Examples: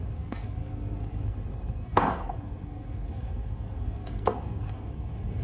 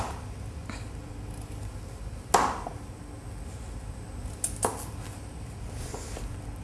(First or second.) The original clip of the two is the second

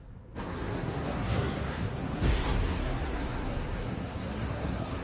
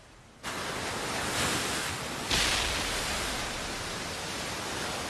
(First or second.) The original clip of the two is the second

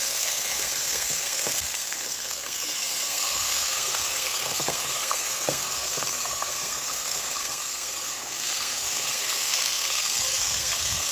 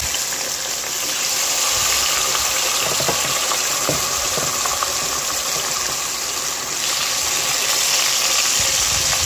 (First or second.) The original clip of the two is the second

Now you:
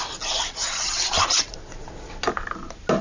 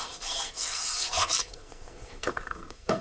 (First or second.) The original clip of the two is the first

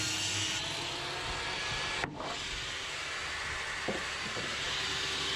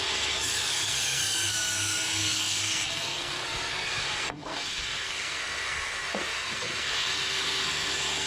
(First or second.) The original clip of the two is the first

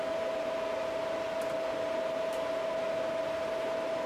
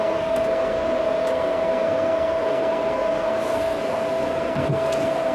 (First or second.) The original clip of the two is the first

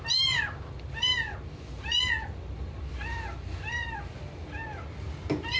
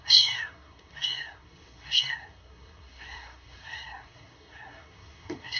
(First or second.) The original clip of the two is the first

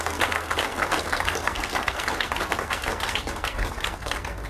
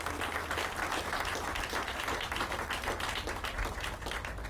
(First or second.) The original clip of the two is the second